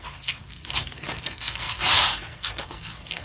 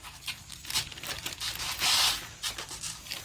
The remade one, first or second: first